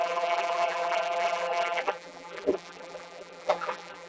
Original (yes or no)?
no